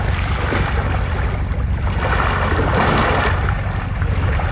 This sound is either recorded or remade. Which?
remade